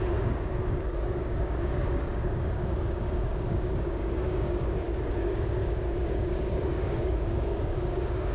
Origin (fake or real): fake